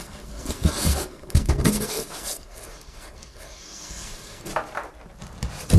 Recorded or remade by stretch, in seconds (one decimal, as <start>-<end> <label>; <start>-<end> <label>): 0.0-4.5 remade; 4.5-5.8 recorded